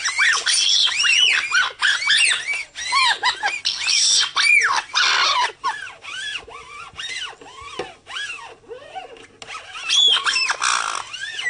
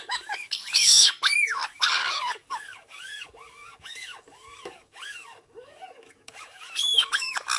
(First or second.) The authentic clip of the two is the first